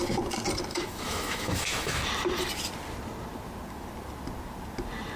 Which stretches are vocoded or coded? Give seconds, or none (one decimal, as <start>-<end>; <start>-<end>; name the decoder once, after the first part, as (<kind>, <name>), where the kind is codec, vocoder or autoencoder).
0.7-2.1 (autoencoder, DAC-VAE)